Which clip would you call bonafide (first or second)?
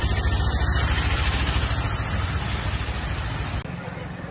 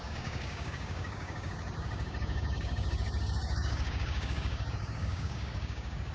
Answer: first